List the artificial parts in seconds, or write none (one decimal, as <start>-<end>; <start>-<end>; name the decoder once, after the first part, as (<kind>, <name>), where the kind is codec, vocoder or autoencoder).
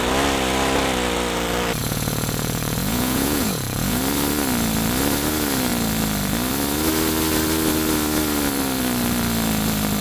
1.8-4.0 (vocoder, Vocos)